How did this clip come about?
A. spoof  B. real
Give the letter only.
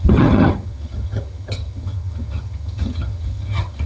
A